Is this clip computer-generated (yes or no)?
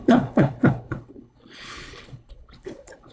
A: yes